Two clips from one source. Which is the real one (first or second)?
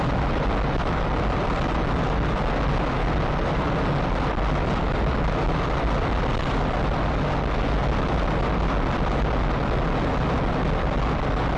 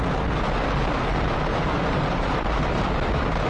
first